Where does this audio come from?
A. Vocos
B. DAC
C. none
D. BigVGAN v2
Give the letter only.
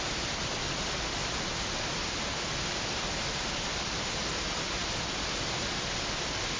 C